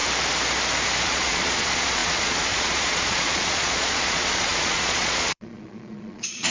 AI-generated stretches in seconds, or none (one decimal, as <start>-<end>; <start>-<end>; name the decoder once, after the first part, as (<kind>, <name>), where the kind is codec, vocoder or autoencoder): 1.0-6.5 (vocoder, Vocos)